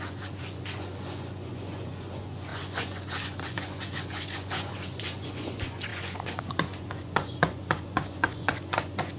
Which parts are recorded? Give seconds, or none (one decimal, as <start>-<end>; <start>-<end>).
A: none